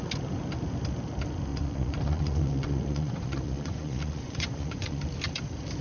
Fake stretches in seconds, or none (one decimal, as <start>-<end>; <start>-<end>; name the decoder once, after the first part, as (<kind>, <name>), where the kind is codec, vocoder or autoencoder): 1.5-5.0 (vocoder, Vocos)